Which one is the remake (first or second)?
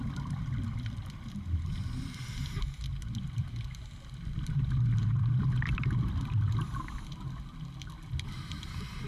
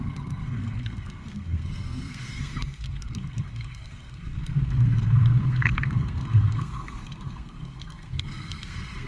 second